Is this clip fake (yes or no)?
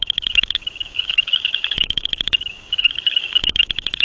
yes